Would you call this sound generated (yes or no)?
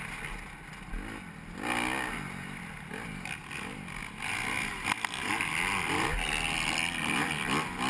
no